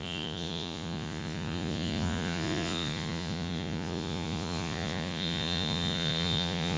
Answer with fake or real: fake